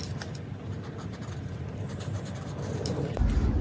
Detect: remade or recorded recorded